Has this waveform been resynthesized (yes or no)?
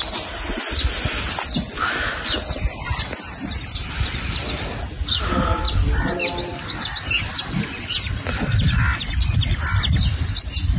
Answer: no